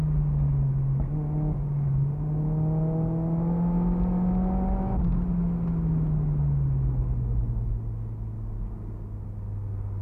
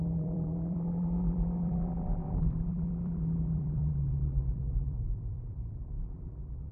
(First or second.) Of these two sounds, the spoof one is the second